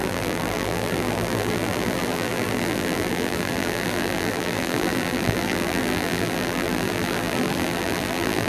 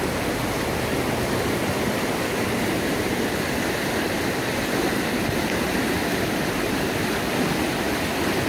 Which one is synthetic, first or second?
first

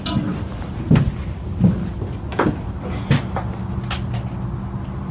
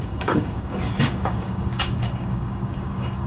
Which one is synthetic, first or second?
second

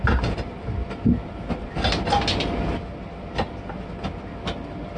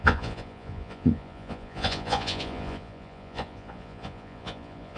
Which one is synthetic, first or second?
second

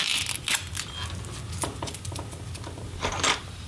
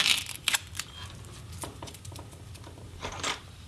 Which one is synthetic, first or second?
second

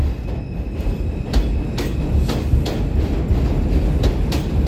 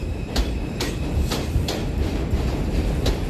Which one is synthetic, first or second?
second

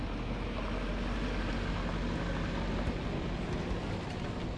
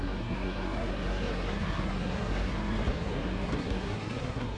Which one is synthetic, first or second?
second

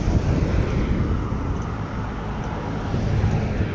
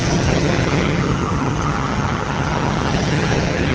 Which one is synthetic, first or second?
second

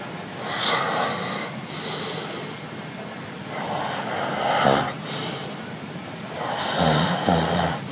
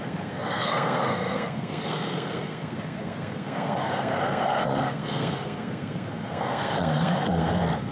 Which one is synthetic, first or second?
second